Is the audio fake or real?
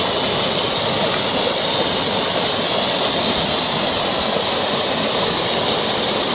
real